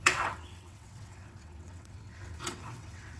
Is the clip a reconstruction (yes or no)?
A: yes